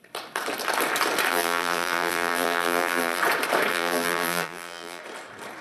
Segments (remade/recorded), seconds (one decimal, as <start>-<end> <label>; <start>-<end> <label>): 0.0-1.3 recorded; 1.3-3.2 remade; 3.2-3.7 recorded; 3.7-5.0 remade; 5.0-5.6 recorded